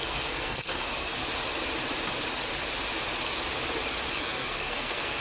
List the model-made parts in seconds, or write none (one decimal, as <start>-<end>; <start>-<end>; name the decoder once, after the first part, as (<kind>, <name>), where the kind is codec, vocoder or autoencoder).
0.0-1.2 (codec, SNAC); 4.1-5.2